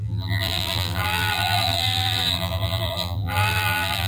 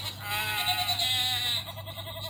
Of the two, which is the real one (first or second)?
second